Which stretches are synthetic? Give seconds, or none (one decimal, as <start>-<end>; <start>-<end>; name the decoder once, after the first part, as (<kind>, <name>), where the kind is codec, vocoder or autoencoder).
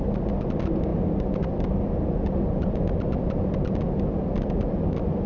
none